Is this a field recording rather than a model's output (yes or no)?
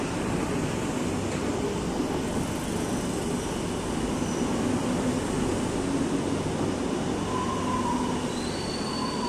yes